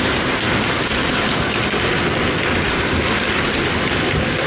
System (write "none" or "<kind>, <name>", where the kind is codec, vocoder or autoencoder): none